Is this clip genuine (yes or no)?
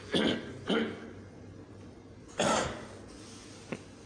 yes